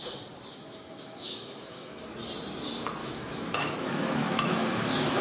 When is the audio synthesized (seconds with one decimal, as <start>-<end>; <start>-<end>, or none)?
0.5-2.0; 3.0-5.2